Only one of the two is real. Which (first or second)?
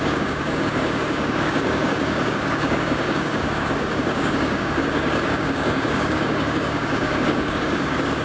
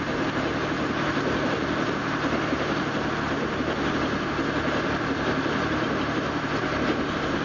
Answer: second